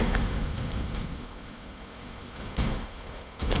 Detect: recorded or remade remade